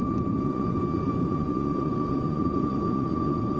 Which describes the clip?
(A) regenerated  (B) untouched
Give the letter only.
A